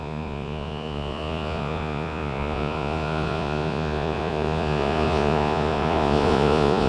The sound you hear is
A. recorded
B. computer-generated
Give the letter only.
B